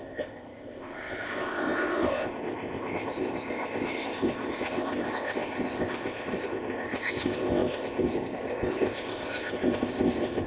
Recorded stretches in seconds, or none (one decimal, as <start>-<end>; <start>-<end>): none